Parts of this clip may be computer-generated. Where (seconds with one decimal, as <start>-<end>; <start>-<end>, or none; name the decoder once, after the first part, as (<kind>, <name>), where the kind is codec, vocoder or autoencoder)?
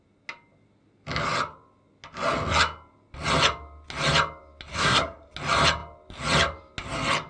4.7-5.3 (codec, SNAC)